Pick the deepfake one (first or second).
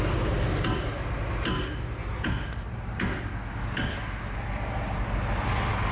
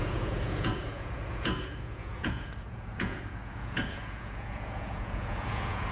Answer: second